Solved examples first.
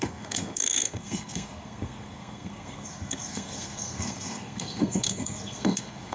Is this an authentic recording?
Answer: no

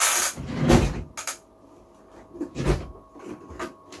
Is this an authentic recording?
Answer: yes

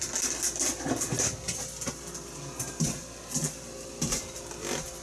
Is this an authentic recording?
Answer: yes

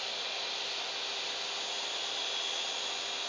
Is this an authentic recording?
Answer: yes